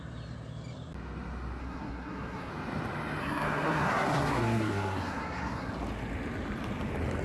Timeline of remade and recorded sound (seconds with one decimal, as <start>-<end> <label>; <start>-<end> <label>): 0.0-1.6 recorded; 1.6-2.5 remade; 2.5-3.2 recorded; 3.2-5.7 remade; 5.7-7.2 recorded